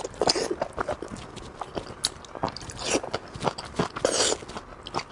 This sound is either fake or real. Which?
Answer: real